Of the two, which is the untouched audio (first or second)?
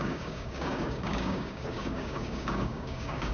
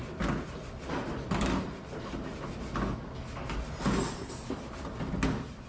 second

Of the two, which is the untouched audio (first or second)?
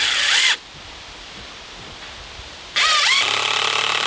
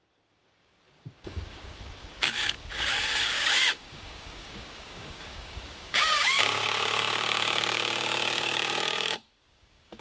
first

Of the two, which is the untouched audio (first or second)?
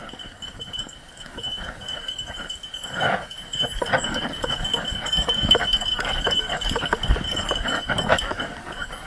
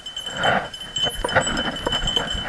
second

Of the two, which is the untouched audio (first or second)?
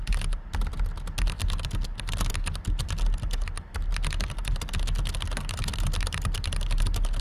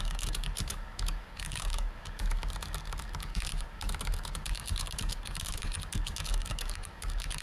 first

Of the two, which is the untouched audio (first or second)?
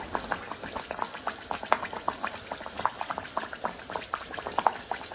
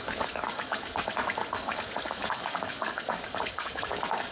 first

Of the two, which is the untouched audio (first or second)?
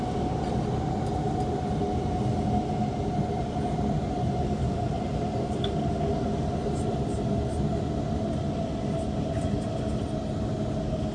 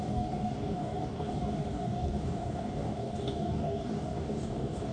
first